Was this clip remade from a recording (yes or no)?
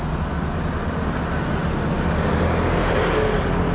no